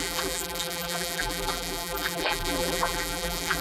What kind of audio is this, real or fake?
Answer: fake